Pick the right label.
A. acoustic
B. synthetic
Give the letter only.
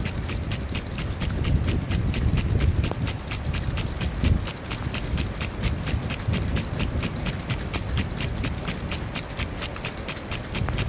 A